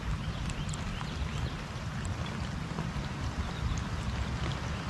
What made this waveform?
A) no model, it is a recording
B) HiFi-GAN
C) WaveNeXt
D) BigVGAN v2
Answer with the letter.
A